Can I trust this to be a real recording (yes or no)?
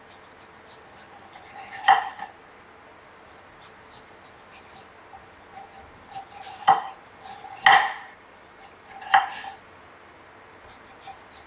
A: yes